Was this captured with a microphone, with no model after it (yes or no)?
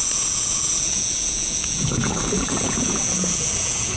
no